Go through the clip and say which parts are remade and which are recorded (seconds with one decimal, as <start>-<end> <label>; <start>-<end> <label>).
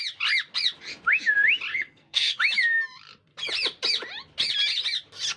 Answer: 0.0-1.7 recorded; 1.7-2.4 remade; 2.4-5.4 recorded